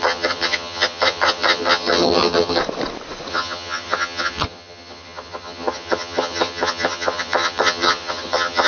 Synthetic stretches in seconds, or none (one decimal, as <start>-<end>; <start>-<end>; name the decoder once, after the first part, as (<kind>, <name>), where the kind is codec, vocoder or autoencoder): 0.0-2.6 (vocoder, HiFi-GAN); 3.3-8.7